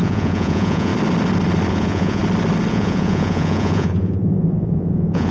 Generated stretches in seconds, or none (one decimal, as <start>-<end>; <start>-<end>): 0.0-0.9; 1.7-2.2; 2.7-5.3